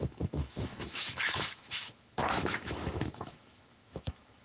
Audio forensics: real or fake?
fake